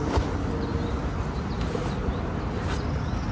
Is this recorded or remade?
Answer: recorded